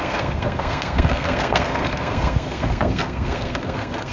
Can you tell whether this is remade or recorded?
remade